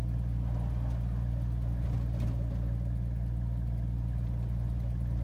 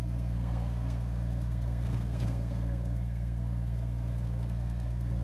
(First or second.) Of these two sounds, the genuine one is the first